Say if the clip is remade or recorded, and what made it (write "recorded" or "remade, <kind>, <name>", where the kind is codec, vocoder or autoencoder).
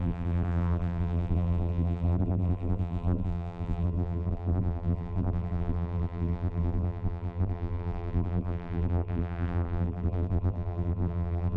remade, vocoder, BigVGAN v2